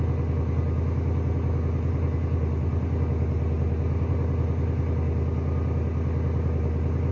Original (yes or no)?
yes